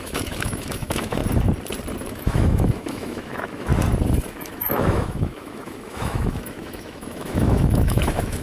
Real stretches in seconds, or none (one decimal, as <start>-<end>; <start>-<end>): 1.2-2.0; 3.7-4.3